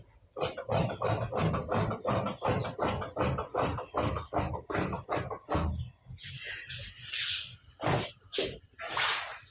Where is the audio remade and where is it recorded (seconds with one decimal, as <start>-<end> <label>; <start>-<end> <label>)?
0.0-9.5 recorded